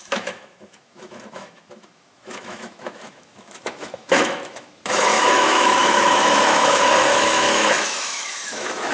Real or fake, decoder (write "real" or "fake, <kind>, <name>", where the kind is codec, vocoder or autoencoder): fake, autoencoder, DAC-VAE